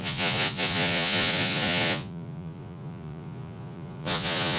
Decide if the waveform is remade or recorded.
remade